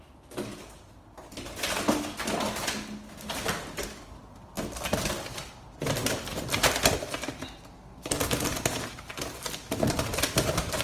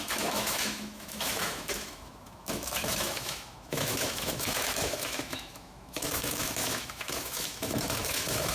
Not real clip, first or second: second